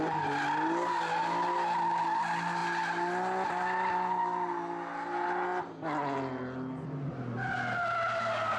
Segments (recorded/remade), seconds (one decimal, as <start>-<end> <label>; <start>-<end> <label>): 0.0-8.6 recorded